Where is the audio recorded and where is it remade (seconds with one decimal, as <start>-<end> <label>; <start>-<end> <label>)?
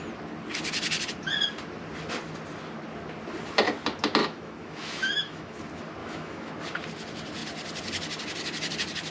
0.0-4.2 recorded; 4.2-5.6 remade; 5.6-6.0 recorded; 6.0-6.5 remade; 6.5-9.1 recorded